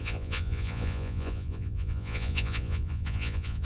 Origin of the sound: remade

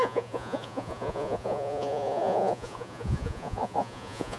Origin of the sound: remade